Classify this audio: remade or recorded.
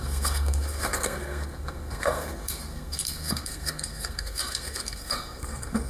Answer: remade